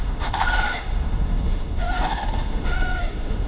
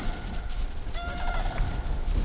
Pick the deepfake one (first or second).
first